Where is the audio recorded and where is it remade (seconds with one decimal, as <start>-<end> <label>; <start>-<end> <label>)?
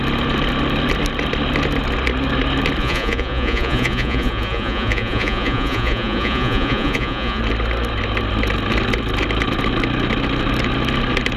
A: 0.0-2.8 recorded; 2.8-7.4 remade; 7.4-11.4 recorded